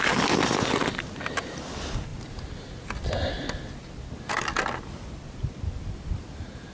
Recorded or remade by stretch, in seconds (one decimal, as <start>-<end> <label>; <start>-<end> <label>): 0.0-6.7 recorded